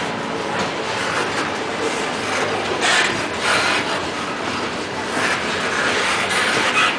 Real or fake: real